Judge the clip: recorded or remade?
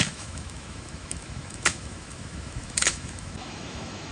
remade